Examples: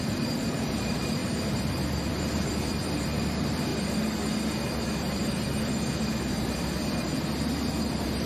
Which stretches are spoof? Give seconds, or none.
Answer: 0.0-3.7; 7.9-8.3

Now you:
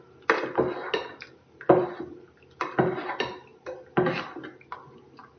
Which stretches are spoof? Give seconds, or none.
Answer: none

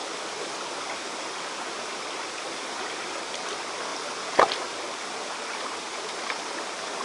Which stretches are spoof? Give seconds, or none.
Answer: 1.8-3.9; 5.3-7.0

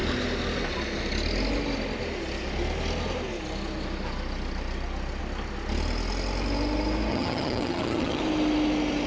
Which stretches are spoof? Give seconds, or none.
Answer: 7.1-8.2

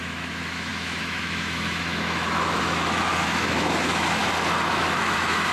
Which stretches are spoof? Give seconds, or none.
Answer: 0.0-4.2; 4.7-5.5

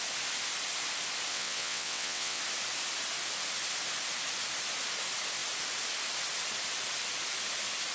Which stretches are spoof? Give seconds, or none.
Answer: 1.3-2.4

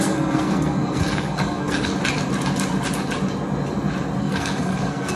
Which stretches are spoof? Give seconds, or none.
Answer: 0.0-1.9; 4.2-5.2

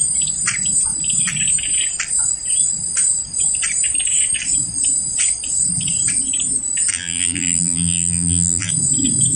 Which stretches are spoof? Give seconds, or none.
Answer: 6.9-8.7